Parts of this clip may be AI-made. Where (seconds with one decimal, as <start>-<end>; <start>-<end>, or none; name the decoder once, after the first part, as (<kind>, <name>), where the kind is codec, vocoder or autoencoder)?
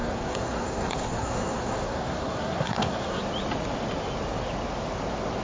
0.0-3.2 (codec, SNAC)